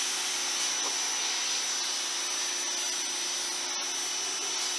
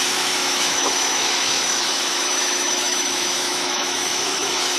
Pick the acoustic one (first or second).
first